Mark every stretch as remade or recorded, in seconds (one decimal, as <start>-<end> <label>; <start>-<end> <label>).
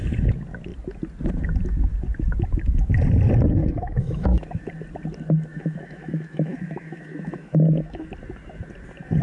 0.0-3.6 recorded; 3.6-4.7 remade; 4.7-5.5 recorded; 5.5-8.1 remade; 8.1-9.2 recorded